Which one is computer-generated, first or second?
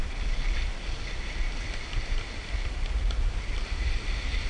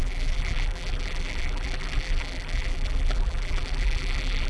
second